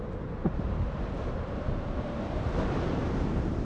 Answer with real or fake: fake